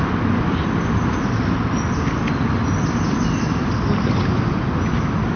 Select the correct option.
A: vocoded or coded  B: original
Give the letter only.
B